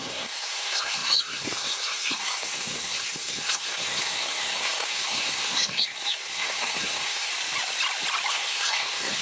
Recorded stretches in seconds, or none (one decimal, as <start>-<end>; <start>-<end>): 7.3-8.3